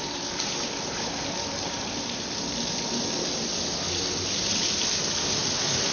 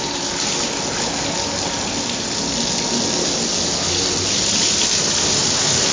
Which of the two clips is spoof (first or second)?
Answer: first